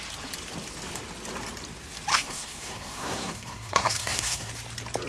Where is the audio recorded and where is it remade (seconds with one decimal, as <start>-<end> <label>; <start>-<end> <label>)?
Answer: 0.0-2.1 recorded; 2.1-4.5 remade; 4.5-5.1 recorded